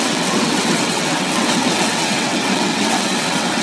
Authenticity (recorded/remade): remade